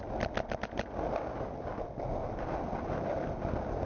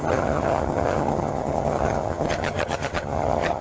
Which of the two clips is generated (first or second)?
second